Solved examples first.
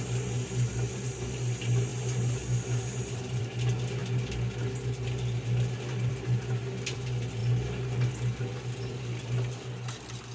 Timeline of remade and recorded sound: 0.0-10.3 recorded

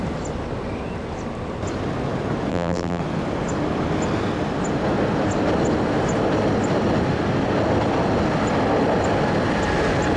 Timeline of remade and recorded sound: 0.0-2.5 recorded; 2.5-3.0 remade; 3.0-10.2 recorded

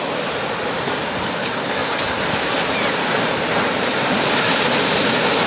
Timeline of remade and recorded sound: 0.0-1.8 recorded; 1.8-5.1 remade; 5.1-5.5 recorded

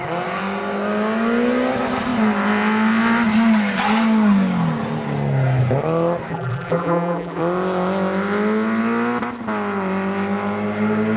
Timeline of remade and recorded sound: 0.0-6.3 recorded; 6.3-7.4 remade; 7.4-11.2 recorded

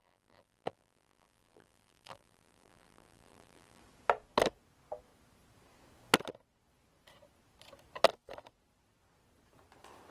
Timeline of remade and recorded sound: 0.0-3.8 remade; 3.8-10.1 recorded

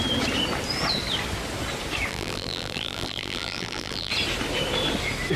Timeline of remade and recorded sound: 0.0-2.1 recorded; 2.1-4.1 remade; 4.1-5.4 recorded

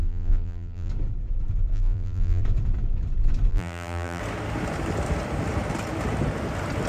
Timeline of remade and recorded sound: 0.0-0.9 remade; 0.9-1.7 recorded; 1.7-2.4 remade; 2.4-3.5 recorded; 3.5-4.2 remade; 4.2-6.9 recorded